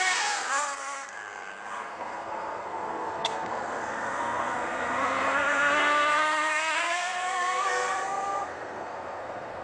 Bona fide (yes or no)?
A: no